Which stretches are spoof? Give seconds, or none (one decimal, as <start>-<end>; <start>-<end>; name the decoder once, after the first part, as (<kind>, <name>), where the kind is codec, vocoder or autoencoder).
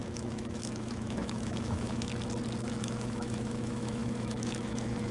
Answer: 0.0-2.1 (autoencoder, DAC-VAE); 2.6-5.1